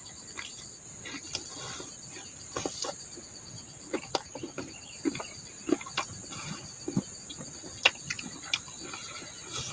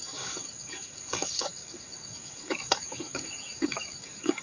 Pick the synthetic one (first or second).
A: second